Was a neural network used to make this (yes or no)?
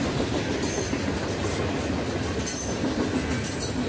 no